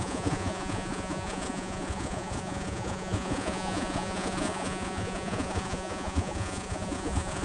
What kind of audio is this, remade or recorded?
remade